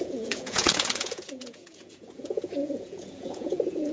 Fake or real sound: fake